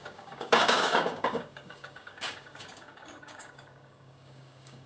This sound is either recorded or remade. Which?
remade